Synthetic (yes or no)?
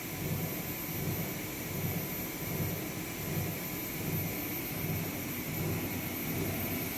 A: no